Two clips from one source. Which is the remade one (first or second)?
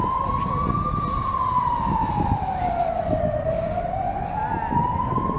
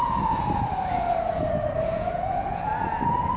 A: second